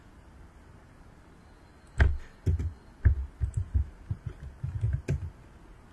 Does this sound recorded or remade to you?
recorded